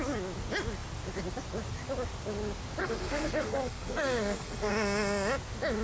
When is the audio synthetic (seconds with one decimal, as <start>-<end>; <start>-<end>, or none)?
2.8-4.7